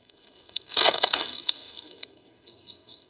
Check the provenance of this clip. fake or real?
fake